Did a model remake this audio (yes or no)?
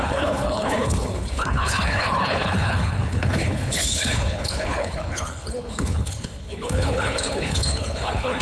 yes